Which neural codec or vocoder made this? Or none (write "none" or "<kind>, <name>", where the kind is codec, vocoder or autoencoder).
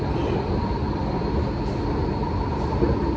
none